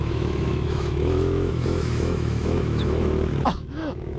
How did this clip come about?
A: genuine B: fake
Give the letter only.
B